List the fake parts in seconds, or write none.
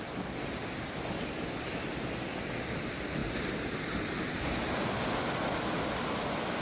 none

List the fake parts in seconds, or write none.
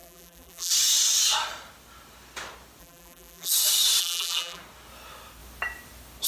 0.0-0.7 (vocoder, BigVGAN v2); 2.8-3.5; 4.0-4.6